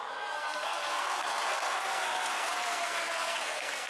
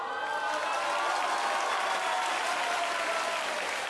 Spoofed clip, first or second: first